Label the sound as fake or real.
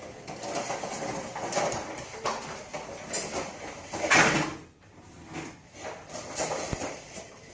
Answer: real